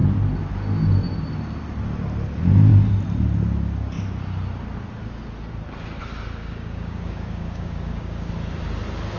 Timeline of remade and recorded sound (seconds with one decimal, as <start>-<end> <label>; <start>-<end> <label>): 0.0-6.4 recorded; 6.4-8.3 remade; 8.3-9.2 recorded